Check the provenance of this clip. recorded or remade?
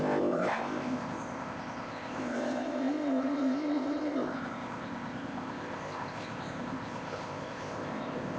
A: remade